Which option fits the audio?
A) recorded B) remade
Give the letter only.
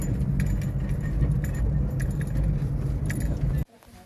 A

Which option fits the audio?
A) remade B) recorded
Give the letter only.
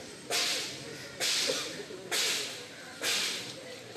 B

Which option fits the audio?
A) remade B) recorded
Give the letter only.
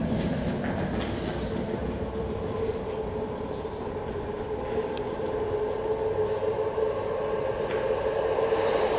B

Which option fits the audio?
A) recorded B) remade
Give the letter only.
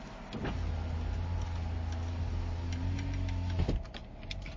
A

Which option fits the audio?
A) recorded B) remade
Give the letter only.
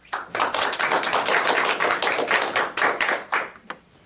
A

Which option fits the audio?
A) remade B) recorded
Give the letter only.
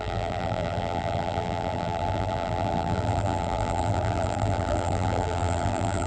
A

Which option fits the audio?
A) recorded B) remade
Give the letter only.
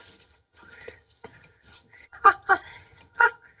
B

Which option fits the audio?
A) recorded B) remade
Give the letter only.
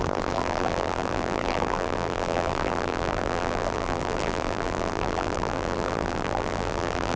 B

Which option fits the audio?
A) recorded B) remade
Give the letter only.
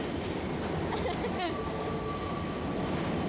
A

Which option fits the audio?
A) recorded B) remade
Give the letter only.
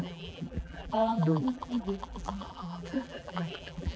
B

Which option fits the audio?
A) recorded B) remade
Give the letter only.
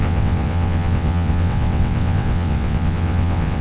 B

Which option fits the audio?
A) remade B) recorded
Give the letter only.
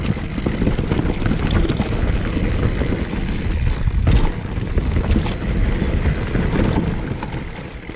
B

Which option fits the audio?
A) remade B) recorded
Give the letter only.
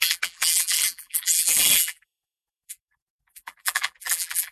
A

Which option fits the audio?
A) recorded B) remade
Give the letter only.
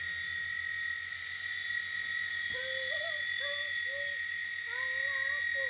A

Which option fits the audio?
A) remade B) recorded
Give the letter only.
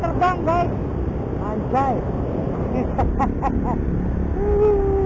B